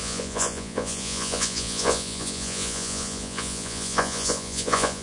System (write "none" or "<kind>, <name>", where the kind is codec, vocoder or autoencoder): vocoder, Vocos